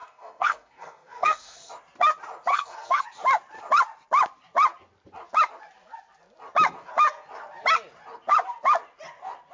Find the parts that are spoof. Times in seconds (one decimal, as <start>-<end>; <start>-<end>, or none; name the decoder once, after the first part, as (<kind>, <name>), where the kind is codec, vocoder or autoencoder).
0.0-1.7 (codec, SNAC); 2.5-3.0